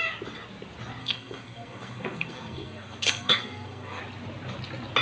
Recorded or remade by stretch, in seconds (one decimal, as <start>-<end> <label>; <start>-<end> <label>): 0.0-1.0 recorded; 1.0-4.0 remade; 4.0-5.0 recorded